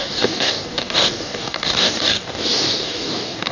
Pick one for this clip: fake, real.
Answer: fake